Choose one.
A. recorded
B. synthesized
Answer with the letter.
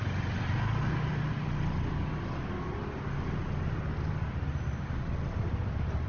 A